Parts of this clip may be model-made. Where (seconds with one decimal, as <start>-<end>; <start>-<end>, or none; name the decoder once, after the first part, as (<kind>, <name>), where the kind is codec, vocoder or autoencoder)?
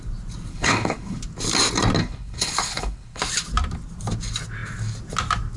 0.5-1.2 (codec, HILCodec); 2.0-3.2